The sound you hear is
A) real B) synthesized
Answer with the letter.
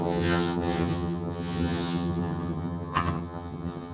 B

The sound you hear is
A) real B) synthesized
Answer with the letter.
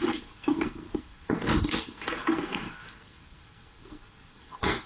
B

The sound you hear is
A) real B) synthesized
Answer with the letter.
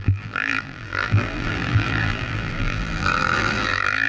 B